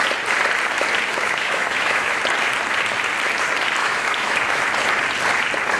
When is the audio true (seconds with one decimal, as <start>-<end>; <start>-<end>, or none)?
0.0-1.1; 2.2-3.8; 4.6-5.8